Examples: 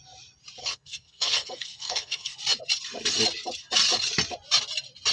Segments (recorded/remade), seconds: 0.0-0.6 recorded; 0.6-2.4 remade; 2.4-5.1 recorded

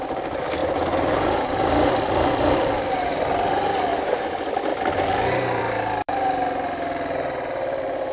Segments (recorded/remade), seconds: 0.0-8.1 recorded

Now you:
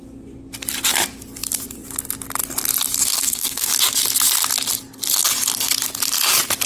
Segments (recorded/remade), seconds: 0.0-3.1 recorded; 3.1-3.7 remade; 3.7-6.7 recorded

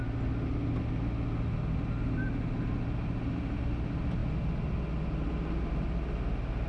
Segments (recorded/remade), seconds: 0.0-6.7 recorded

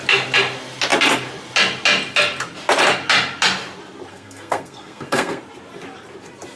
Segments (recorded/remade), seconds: 0.0-4.1 recorded; 4.1-5.4 remade; 5.4-6.6 recorded

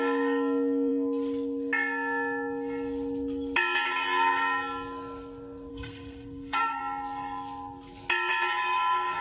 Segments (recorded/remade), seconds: 0.0-5.7 recorded; 5.7-6.8 remade; 6.8-9.2 recorded

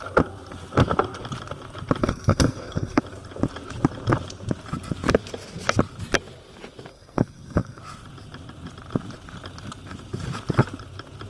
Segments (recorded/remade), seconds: 0.0-2.0 recorded; 2.0-3.0 remade; 3.0-6.9 recorded; 6.9-7.8 remade; 7.8-11.3 recorded

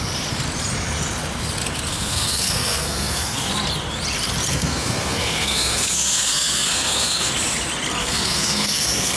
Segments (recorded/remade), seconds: 0.0-1.9 recorded; 1.9-3.5 remade; 3.5-4.5 recorded; 4.5-7.3 remade; 7.3-8.0 recorded; 8.0-9.2 remade